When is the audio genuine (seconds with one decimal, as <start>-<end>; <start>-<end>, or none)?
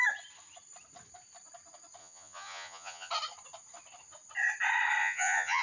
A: 0.0-2.0; 3.1-5.0